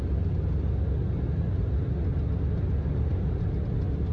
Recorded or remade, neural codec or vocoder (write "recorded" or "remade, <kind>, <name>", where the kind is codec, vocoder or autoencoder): recorded